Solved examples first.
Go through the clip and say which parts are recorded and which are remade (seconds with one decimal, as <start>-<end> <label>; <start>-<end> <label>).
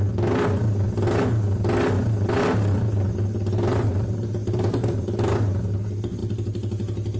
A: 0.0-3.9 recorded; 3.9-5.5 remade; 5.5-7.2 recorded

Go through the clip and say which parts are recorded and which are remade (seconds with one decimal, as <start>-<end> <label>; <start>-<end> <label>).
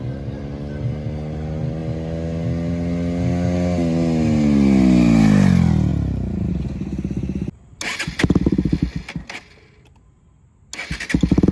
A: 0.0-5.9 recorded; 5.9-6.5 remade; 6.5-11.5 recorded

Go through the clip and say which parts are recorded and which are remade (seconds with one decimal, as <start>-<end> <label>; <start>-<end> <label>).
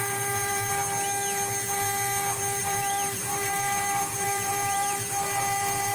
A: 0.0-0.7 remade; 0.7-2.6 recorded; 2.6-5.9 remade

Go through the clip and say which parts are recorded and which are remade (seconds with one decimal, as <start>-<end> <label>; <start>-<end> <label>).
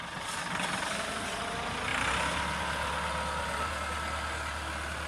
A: 0.0-5.1 recorded